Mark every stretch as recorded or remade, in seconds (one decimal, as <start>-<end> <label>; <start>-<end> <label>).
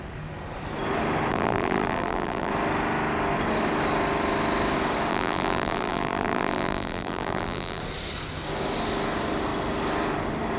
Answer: 0.0-1.3 recorded; 1.3-2.5 remade; 2.5-5.1 recorded; 5.1-7.8 remade; 7.8-10.6 recorded